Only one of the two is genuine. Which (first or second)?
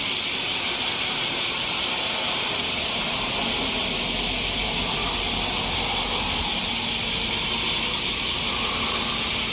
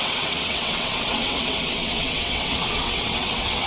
first